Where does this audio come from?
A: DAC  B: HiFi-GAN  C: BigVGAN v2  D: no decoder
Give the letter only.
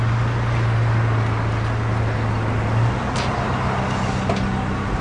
D